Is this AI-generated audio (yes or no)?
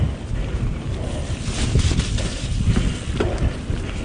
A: no